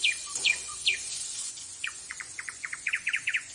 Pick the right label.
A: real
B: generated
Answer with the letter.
B